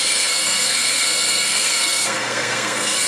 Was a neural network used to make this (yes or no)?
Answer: yes